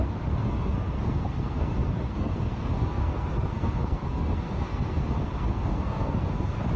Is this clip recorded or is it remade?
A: remade